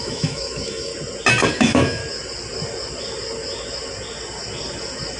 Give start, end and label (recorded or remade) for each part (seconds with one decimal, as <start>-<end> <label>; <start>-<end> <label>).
0.0-0.9 remade; 0.9-1.5 recorded; 1.5-2.0 remade; 2.0-5.2 recorded